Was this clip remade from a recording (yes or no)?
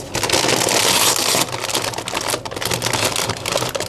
no